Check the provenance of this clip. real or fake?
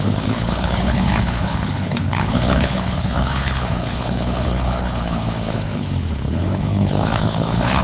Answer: fake